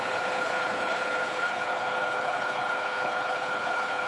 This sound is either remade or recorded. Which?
remade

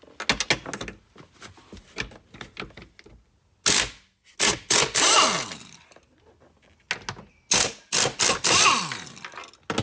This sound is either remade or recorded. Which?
recorded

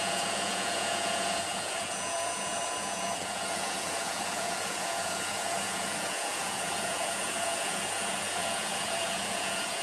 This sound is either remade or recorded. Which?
remade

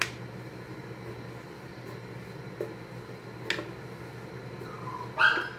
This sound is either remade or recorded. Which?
recorded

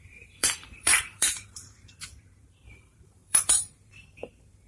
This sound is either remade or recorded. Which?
remade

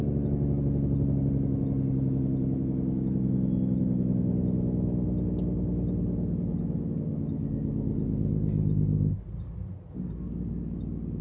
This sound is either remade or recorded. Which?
recorded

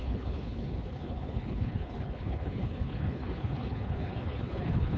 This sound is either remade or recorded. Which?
remade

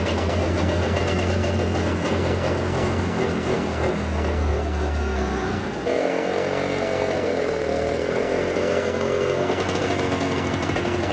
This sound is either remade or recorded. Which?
remade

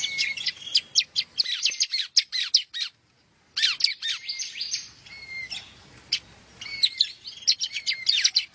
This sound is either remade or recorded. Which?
recorded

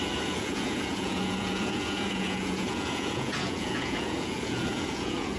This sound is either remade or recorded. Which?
remade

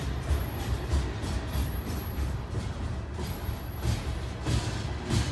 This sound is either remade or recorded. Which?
recorded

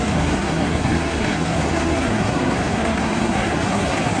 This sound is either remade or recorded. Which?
remade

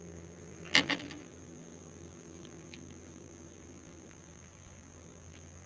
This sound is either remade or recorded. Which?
remade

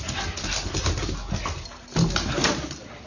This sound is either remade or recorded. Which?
recorded